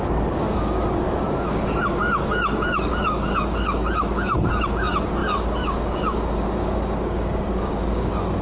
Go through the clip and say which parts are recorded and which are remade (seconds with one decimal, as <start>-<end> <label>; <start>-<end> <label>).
0.0-8.4 remade